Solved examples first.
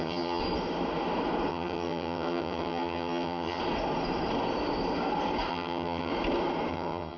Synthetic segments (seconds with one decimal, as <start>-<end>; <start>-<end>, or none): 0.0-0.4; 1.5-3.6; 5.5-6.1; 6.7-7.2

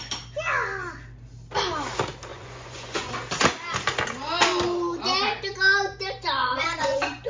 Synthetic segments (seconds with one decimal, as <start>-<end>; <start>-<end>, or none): 2.3-3.1; 6.4-7.3

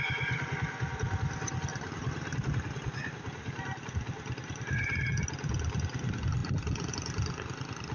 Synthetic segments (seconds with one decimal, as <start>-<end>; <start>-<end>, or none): none

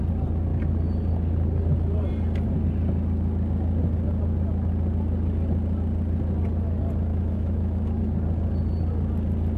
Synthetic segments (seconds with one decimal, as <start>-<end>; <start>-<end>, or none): 7.1-8.0

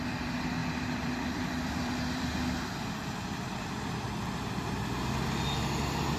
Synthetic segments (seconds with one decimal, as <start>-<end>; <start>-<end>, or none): 0.6-2.2

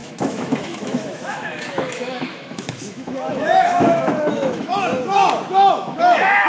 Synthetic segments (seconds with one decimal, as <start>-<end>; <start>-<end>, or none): 0.0-4.7; 5.7-6.5